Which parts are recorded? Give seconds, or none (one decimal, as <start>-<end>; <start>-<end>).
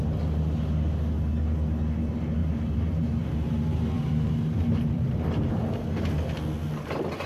0.0-2.4; 5.5-7.3